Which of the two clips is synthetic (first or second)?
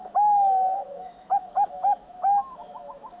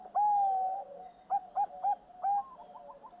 first